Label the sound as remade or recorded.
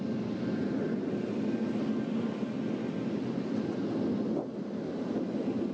recorded